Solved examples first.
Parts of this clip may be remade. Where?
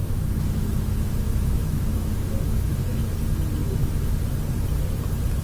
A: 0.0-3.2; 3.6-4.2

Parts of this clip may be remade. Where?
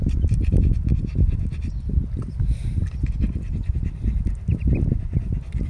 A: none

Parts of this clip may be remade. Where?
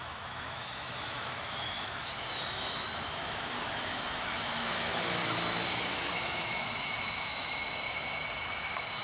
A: 0.0-9.0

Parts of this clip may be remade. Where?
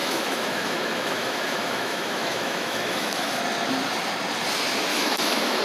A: 0.0-3.4; 4.9-5.6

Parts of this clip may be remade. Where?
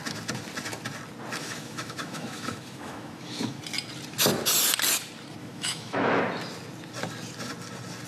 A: 1.4-3.6; 5.4-6.2